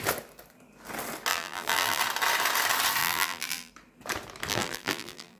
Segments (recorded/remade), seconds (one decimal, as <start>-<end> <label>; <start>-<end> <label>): 0.0-1.3 recorded; 1.3-2.0 remade; 2.0-3.0 recorded; 3.0-3.7 remade; 3.7-4.5 recorded; 4.5-5.4 remade